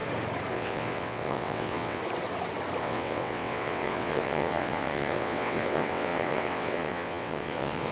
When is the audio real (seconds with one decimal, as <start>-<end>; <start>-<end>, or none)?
0.0-0.5; 2.0-2.8